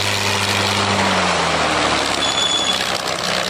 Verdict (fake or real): real